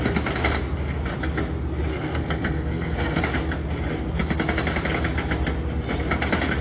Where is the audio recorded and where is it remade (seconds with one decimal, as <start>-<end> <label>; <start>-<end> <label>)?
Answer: 0.0-1.9 recorded; 1.9-3.2 remade; 3.2-6.6 recorded